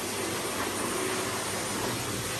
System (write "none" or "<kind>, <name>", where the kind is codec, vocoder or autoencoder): none